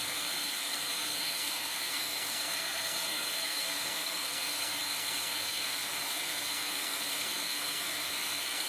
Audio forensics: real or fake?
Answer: fake